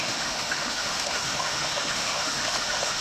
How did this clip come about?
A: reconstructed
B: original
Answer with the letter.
A